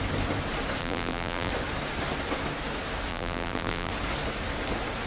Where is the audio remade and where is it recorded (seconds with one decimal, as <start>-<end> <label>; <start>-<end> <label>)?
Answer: 0.0-0.8 recorded; 0.8-1.5 remade; 1.5-3.1 recorded; 3.1-3.9 remade; 3.9-5.1 recorded